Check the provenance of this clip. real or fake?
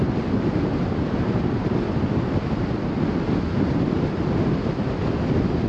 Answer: real